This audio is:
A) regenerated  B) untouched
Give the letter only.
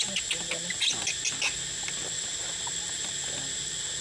B